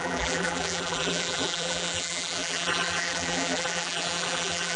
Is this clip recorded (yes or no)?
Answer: no